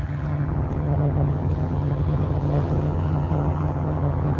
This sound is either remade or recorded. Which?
remade